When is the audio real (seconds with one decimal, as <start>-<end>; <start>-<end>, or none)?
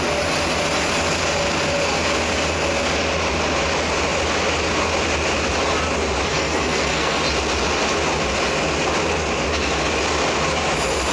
0.0-6.3; 7.2-11.1